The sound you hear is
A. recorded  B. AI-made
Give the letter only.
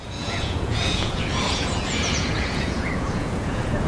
B